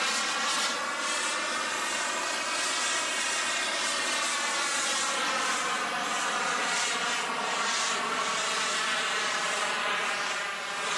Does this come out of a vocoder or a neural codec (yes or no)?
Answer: no